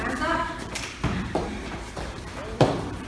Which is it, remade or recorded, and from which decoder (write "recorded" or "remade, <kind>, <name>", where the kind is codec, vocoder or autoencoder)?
remade, vocoder, BigVGAN v2